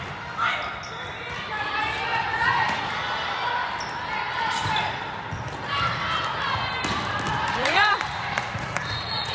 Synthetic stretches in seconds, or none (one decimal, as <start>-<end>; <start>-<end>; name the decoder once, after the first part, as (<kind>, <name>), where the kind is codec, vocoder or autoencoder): 2.1-2.9 (vocoder, Vocos); 7.6-9.3